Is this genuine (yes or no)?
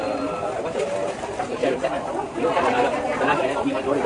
yes